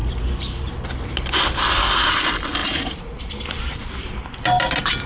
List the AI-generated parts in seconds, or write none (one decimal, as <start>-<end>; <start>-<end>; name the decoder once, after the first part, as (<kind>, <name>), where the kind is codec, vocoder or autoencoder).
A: 0.0-0.9 (vocoder, BigVGAN v2); 2.6-3.8